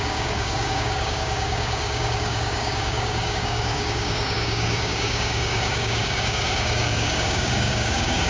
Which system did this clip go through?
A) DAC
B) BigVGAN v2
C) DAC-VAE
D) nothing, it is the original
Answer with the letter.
A